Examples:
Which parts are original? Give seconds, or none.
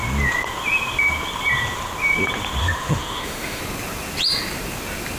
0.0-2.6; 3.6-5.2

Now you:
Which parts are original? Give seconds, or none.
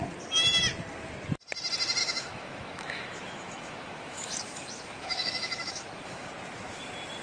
0.0-2.0; 6.3-7.2